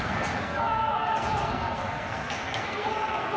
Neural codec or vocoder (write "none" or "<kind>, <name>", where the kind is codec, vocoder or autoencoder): codec, SNAC